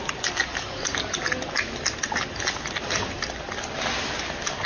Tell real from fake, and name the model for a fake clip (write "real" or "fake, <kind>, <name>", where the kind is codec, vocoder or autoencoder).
real